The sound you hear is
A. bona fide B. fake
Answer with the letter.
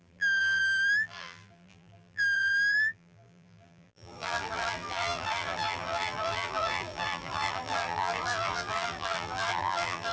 B